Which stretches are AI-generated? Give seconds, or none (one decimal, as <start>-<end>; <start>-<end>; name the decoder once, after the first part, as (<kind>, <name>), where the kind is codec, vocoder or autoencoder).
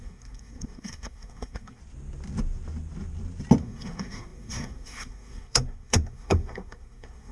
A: 0.0-1.8 (codec, SNAC); 3.6-7.3